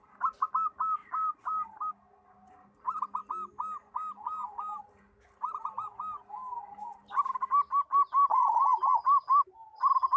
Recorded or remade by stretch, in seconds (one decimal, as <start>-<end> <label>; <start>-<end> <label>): 0.0-10.2 recorded